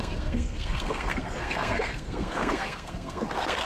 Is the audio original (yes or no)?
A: no